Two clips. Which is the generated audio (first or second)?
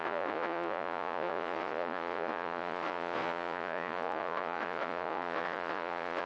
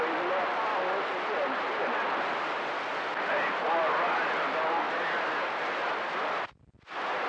first